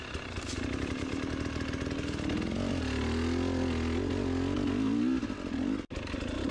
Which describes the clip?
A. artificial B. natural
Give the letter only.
B